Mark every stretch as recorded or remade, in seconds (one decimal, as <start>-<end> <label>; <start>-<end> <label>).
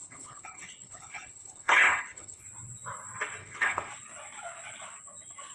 0.0-2.4 remade; 2.4-3.4 recorded; 3.4-3.9 remade; 3.9-5.5 recorded